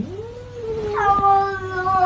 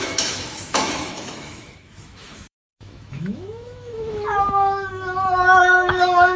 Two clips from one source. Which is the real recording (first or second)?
first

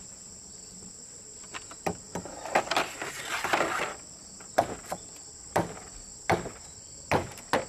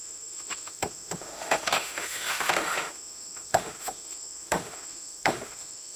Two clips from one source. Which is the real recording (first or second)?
first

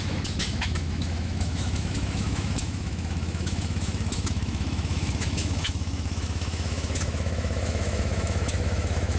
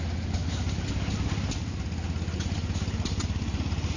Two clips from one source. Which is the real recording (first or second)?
second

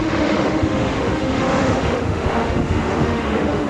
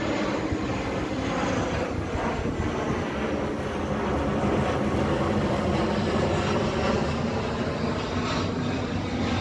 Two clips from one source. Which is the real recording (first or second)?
second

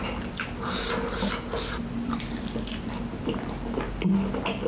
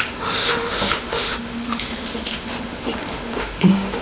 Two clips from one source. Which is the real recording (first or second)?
first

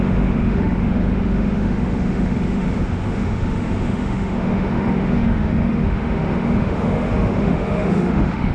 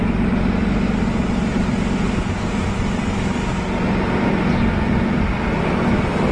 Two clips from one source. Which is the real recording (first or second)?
second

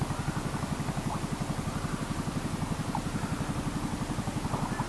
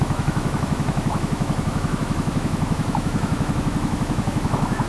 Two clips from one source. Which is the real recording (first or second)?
first